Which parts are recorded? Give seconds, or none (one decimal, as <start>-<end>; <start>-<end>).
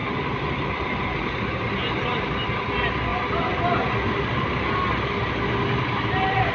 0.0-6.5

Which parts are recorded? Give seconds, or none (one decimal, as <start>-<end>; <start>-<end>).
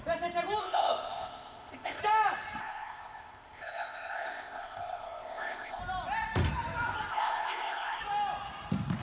0.0-0.6; 2.0-2.6; 5.8-7.1; 8.0-9.0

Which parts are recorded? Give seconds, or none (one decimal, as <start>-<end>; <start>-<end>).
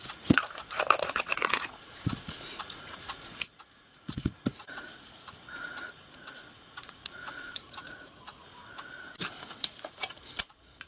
8.6-10.4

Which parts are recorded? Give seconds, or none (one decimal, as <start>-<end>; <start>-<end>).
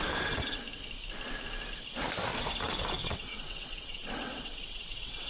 0.0-3.0